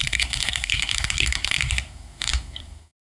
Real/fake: fake